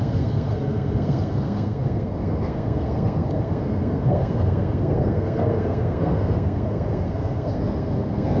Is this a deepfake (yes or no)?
yes